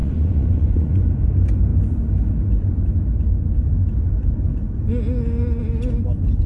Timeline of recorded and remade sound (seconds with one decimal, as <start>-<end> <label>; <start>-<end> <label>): 0.0-1.1 remade; 1.1-6.5 recorded